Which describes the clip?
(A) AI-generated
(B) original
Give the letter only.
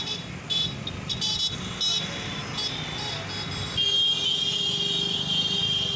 B